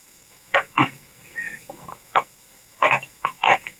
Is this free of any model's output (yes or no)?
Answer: no